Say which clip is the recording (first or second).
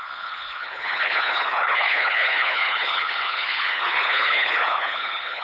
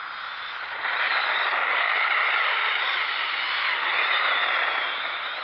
second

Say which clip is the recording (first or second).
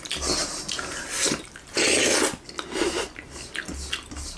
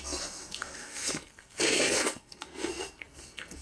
first